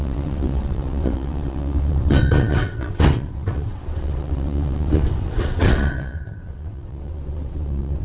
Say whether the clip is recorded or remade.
remade